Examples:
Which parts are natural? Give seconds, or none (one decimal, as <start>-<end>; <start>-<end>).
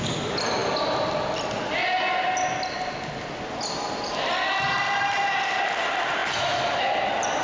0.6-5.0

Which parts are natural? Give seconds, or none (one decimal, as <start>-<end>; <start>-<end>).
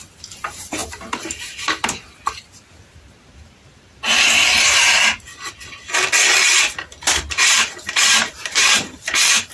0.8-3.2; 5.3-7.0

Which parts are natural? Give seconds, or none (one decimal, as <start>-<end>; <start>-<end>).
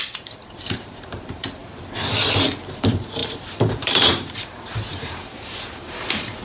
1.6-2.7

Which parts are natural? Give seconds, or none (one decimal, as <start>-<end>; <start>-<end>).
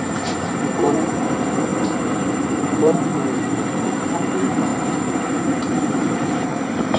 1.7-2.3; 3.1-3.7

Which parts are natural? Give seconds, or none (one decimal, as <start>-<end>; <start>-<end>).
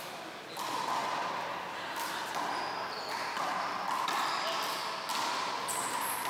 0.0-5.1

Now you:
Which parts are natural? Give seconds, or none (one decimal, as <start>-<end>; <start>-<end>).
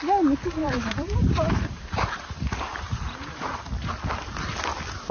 0.0-0.6; 3.7-5.1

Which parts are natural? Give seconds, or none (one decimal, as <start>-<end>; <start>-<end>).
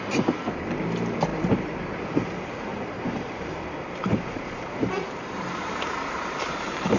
0.0-1.3; 2.0-2.7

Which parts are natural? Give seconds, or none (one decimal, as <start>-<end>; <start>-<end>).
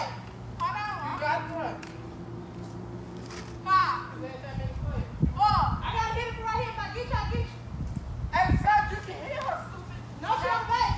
0.0-1.1; 2.8-11.0